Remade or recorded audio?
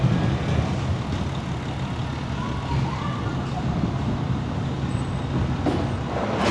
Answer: recorded